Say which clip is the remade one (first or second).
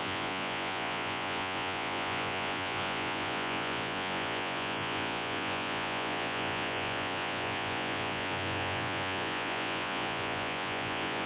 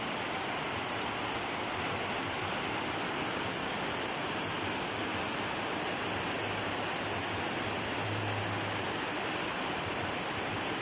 first